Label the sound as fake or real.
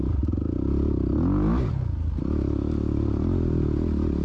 real